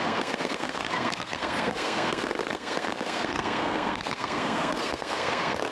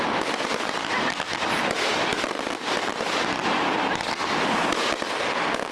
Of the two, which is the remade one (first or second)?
first